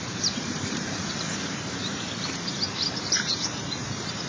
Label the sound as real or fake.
fake